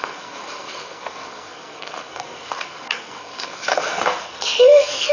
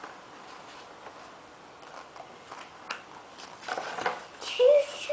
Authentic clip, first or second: second